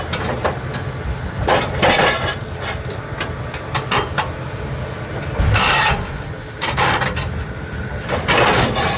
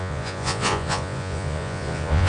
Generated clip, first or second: second